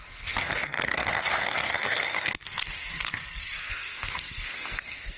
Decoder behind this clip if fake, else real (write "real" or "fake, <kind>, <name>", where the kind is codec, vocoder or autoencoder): fake, codec, SNAC